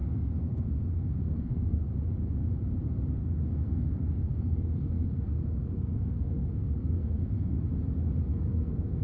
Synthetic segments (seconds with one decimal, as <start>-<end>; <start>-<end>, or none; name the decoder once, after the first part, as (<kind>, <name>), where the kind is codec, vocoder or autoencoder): 0.0-1.8 (codec, SNAC); 3.2-7.6; 8.3-9.0